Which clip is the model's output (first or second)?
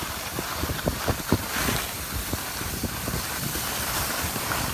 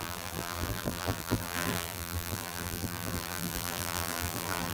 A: second